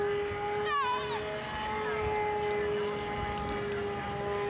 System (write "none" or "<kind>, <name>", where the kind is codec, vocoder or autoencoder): none